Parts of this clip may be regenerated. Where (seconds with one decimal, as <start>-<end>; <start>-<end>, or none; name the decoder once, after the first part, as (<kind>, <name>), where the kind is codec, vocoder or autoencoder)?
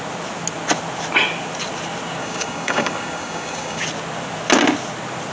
2.2-3.8 (codec, DAC)